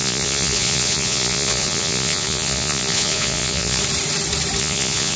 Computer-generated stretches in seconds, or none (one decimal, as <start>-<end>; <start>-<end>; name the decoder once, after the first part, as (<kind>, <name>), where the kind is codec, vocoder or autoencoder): 0.0-3.8 (vocoder, Vocos); 4.6-5.2

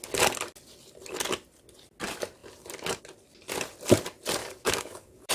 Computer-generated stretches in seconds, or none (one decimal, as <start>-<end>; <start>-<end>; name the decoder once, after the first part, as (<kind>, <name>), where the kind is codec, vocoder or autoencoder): 4.4-5.3 (codec, DAC)

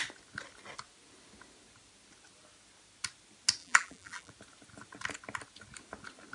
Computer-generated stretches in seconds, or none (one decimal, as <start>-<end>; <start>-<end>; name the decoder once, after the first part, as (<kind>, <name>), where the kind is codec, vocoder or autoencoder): 3.6-4.3 (vocoder, BigVGAN v2)

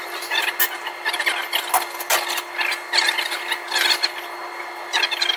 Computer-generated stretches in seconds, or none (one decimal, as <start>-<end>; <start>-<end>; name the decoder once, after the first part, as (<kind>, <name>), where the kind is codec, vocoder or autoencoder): none

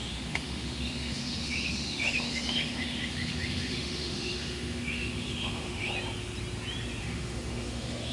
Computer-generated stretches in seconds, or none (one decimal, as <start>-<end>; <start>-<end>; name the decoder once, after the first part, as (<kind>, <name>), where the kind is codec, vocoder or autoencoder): 0.0-5.9 (autoencoder, DAC-VAE); 7.0-8.1

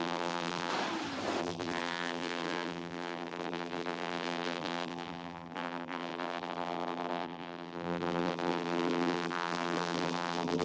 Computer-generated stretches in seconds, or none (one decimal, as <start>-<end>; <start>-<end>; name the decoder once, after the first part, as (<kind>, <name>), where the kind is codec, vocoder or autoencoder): 0.0-0.7 (vocoder, BigVGAN v2); 1.4-10.6

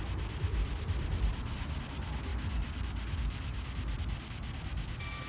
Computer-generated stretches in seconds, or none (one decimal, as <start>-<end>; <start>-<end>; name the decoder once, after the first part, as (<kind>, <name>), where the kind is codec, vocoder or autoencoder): 0.5-1.8 (vocoder, BigVGAN v2); 2.3-4.0